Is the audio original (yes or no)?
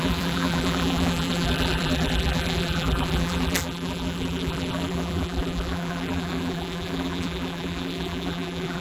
no